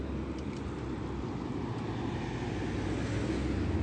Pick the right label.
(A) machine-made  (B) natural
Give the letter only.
B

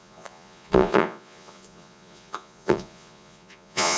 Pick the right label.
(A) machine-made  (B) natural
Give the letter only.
A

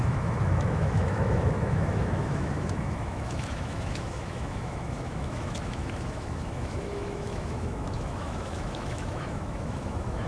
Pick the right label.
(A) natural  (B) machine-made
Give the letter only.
B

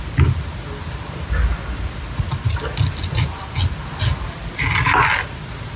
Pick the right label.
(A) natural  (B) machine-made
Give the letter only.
A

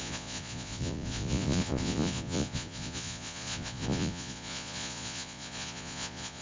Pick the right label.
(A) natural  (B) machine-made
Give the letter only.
B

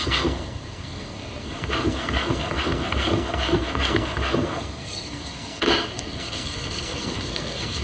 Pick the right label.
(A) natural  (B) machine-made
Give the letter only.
B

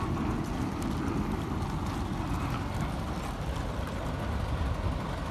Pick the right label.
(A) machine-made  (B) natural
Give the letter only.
B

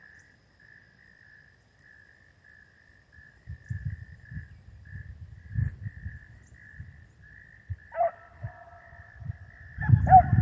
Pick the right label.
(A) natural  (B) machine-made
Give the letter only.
A